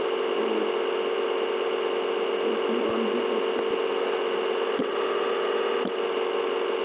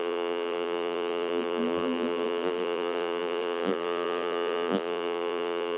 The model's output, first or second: second